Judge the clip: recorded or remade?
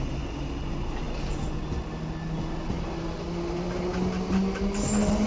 recorded